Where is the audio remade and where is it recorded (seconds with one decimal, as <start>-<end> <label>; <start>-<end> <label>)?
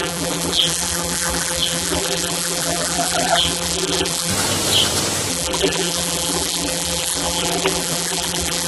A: 0.0-4.3 remade; 4.3-5.3 recorded; 5.3-8.7 remade